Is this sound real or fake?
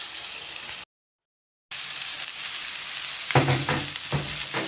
real